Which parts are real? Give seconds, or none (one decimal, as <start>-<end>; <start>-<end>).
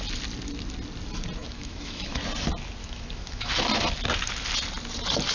0.0-1.4; 2.2-2.8; 3.5-5.3